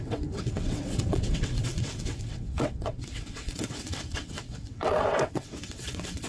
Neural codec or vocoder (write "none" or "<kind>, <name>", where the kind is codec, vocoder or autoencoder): vocoder, WaveNeXt